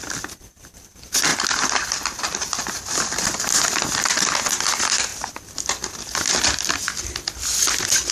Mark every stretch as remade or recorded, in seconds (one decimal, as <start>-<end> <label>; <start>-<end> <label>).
0.0-8.1 recorded